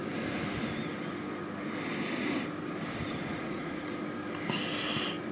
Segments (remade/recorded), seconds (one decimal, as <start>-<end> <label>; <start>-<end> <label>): 0.0-3.1 recorded; 3.1-3.8 remade; 3.8-5.3 recorded